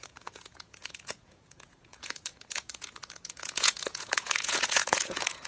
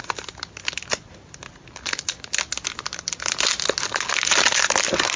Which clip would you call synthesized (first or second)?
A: first